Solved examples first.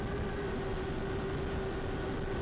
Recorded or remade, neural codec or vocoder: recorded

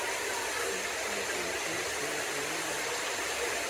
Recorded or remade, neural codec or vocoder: recorded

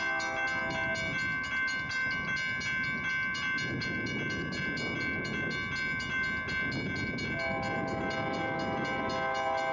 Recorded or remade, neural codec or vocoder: recorded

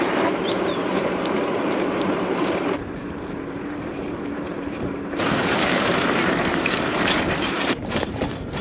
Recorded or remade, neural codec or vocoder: remade, vocoder, BigVGAN v2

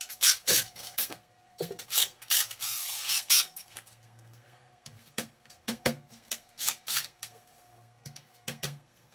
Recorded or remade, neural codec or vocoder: remade, codec, SNAC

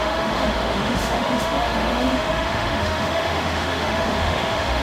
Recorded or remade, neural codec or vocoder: remade, autoencoder, DAC-VAE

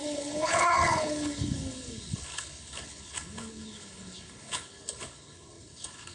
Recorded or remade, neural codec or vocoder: remade, codec, HILCodec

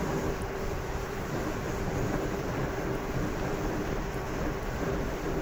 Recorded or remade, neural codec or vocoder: remade, vocoder, BigVGAN v2